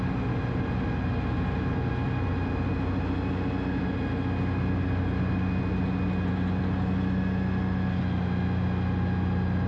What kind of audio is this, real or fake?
real